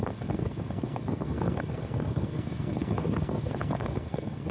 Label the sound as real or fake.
fake